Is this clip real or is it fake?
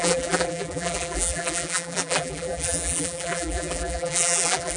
fake